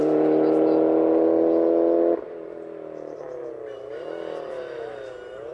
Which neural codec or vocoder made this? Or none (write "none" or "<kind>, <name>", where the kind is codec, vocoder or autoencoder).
none